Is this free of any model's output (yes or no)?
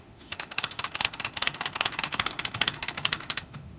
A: no